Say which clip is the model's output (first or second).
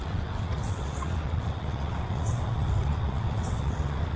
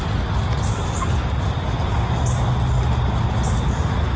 first